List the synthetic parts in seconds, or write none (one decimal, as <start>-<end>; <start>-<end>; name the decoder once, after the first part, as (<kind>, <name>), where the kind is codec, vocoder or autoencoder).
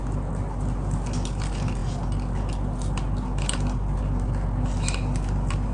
none